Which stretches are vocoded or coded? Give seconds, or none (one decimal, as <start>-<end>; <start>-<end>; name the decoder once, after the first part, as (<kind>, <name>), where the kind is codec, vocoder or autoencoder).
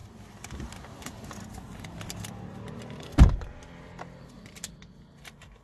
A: none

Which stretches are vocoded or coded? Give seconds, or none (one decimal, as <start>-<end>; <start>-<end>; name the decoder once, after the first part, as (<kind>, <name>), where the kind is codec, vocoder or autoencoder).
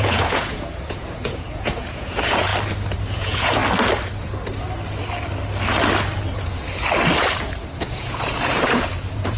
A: 0.0-2.5 (vocoder, Vocos); 3.1-3.6; 7.8-9.4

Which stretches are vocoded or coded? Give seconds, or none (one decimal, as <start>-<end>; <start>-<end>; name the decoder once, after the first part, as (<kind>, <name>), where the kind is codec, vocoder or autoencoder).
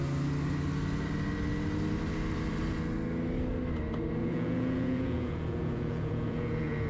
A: 4.2-6.9 (vocoder, Vocos)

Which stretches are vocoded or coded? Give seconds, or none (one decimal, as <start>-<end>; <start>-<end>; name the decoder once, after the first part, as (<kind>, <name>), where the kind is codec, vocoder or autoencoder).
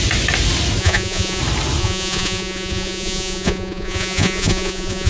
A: 0.8-1.4 (vocoder, Vocos); 1.8-5.1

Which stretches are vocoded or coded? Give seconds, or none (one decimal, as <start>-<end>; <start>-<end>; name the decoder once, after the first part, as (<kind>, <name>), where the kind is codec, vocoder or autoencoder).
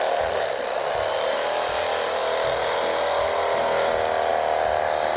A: none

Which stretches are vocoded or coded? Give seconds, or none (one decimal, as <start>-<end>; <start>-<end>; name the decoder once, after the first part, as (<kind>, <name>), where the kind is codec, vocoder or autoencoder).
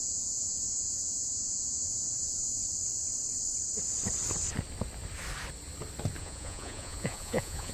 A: 0.0-2.6 (vocoder, Vocos); 6.2-7.7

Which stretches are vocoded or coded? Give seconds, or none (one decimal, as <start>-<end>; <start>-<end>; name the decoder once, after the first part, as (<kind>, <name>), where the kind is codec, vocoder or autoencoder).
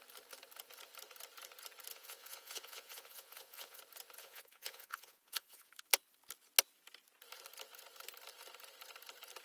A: 1.9-3.8 (vocoder, Vocos); 4.2-5.7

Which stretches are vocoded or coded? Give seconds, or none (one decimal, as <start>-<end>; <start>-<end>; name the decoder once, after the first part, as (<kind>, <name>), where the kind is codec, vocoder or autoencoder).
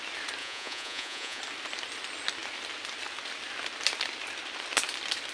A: 0.4-1.4 (vocoder, Vocos)